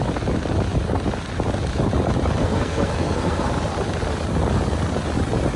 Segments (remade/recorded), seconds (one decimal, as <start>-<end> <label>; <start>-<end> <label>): 0.0-2.4 recorded; 2.4-3.5 remade; 3.5-5.6 recorded